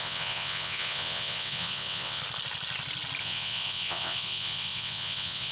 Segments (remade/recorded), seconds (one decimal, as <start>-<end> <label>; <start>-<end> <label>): 0.0-2.2 remade; 2.2-3.2 recorded; 3.2-5.5 remade